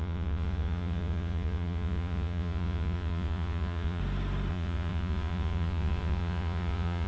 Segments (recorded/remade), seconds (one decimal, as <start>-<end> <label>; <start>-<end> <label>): 0.0-4.0 remade; 4.0-4.5 recorded; 4.5-7.1 remade